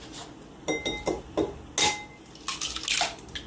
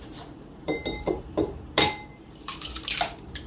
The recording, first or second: first